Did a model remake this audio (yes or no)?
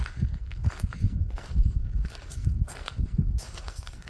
yes